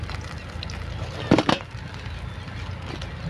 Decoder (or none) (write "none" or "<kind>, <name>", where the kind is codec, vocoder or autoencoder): none